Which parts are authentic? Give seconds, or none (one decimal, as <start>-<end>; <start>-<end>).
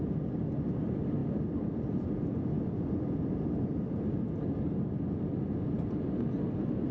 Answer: 0.0-6.9